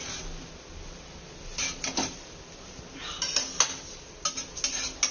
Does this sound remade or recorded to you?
recorded